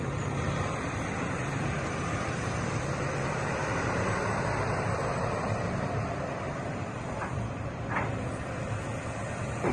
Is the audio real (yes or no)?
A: no